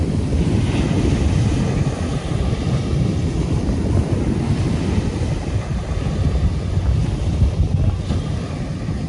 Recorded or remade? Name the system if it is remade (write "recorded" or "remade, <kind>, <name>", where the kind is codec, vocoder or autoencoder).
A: recorded